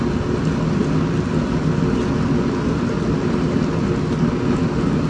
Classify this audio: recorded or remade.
recorded